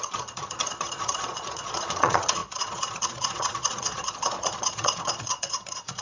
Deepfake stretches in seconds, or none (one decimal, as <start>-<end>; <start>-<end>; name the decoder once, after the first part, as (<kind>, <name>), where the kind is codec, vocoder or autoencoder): 0.0-6.0 (vocoder, Vocos)